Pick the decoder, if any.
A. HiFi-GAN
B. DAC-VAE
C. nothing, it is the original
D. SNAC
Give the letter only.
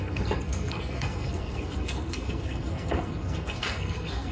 D